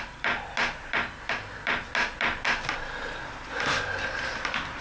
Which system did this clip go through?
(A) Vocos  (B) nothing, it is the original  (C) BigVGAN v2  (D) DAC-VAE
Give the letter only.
B